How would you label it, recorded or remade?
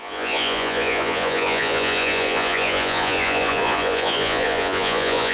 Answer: remade